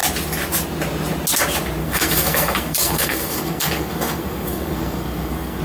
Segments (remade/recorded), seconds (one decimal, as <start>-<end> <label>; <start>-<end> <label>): 0.0-1.8 recorded; 1.8-5.6 remade